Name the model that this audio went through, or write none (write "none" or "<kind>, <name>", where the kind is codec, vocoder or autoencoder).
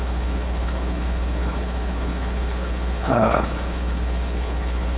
codec, HILCodec